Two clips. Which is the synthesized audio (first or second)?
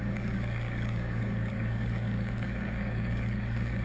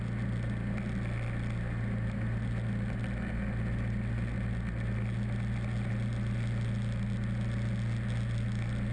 first